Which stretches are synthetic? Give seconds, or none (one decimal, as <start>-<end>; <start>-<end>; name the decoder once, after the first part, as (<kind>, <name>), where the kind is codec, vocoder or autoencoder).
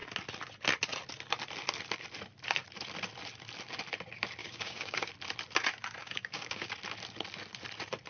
4.4-5.1 (codec, DAC); 6.0-6.7